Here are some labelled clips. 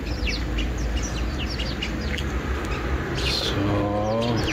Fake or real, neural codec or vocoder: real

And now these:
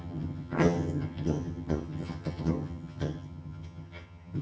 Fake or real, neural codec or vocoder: fake, vocoder, HiFi-GAN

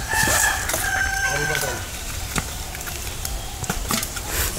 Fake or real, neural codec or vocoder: fake, vocoder, BigVGAN v2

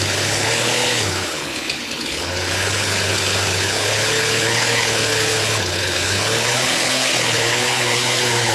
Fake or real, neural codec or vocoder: fake, codec, HILCodec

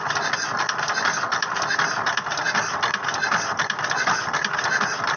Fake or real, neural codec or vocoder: real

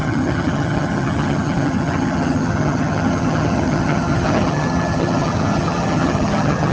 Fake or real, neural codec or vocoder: fake, vocoder, HiFi-GAN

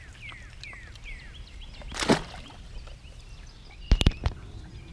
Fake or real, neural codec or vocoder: real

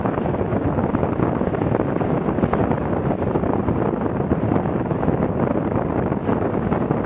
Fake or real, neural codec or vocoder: real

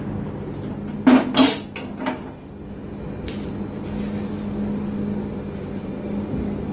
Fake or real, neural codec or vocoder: real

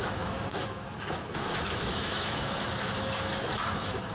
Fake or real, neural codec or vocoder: fake, autoencoder, DAC-VAE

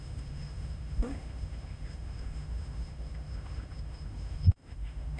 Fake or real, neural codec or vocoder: fake, autoencoder, DAC-VAE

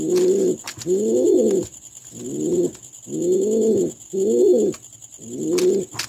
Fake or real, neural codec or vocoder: real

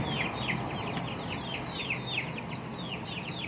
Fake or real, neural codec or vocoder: real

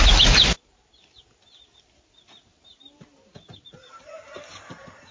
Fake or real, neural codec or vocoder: real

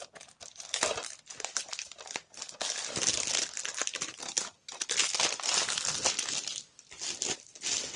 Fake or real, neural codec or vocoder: real